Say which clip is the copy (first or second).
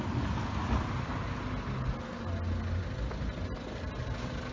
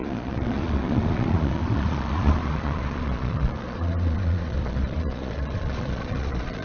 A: second